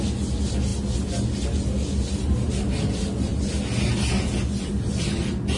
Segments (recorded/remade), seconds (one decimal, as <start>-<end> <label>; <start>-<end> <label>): 0.0-5.6 recorded